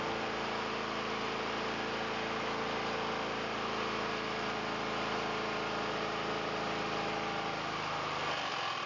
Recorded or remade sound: recorded